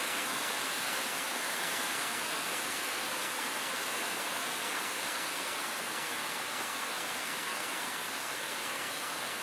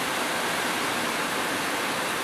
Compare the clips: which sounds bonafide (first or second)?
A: second